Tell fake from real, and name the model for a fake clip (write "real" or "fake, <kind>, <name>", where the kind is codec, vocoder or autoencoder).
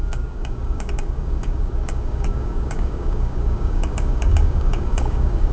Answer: fake, codec, DAC